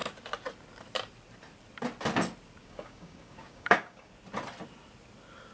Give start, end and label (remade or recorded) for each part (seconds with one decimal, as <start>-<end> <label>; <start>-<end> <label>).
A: 0.0-2.6 recorded; 2.6-4.1 remade; 4.1-5.5 recorded